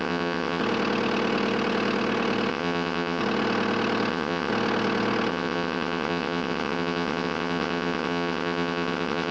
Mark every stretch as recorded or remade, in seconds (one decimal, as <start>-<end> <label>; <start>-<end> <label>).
0.0-0.6 remade; 0.6-2.5 recorded; 2.5-3.2 remade; 3.2-4.1 recorded; 4.1-4.5 remade; 4.5-5.3 recorded; 5.3-9.3 remade